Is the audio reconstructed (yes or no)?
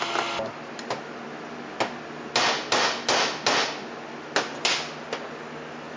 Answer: no